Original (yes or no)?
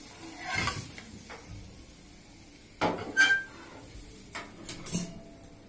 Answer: yes